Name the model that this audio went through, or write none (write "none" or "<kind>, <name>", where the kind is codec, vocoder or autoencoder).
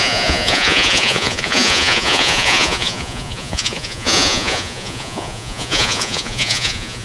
vocoder, Vocos